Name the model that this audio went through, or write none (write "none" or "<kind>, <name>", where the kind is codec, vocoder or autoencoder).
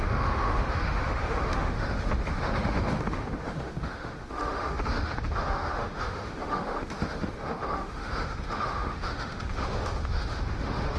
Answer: autoencoder, DAC-VAE